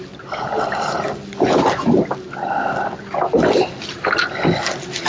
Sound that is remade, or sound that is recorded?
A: recorded